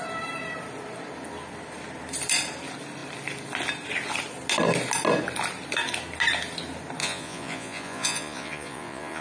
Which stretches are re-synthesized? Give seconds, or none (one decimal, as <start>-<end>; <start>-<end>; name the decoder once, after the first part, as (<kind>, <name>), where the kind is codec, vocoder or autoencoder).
7.0-9.2 (vocoder, Vocos)